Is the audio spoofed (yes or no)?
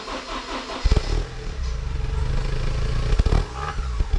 no